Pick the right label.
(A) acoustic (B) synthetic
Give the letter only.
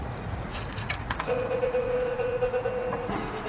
B